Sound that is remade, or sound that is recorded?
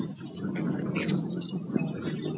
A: recorded